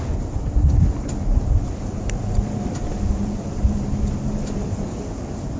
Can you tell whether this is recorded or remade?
recorded